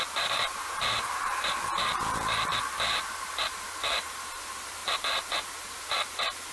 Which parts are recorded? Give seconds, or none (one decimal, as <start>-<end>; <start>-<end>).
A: 0.0-6.5

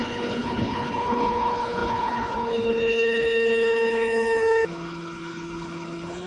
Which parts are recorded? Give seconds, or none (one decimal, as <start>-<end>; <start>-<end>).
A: none

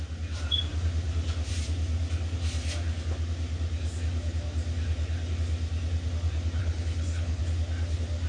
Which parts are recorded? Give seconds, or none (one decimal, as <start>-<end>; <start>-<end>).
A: 0.0-6.6; 7.4-8.3

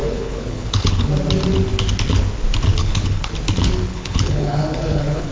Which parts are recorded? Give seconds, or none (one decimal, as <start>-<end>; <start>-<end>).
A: 1.1-2.8; 3.3-3.9

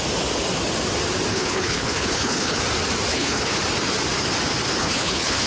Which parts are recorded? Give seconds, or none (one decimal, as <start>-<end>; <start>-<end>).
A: 0.0-1.3; 2.6-3.1; 3.6-4.8

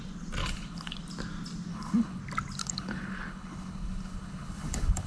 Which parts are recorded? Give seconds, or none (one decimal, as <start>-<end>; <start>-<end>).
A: 0.0-0.4; 1.0-1.7; 2.2-2.6